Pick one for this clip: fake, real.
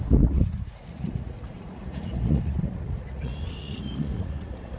fake